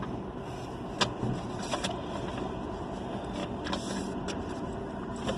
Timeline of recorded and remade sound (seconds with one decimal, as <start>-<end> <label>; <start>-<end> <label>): 0.0-5.4 recorded